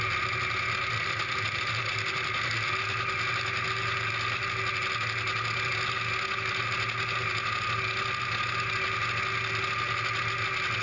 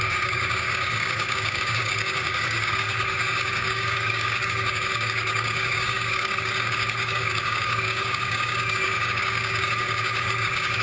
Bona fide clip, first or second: first